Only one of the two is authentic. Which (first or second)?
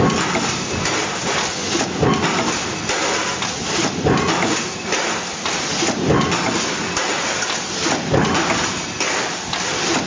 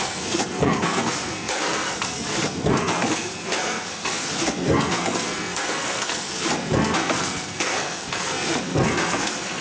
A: first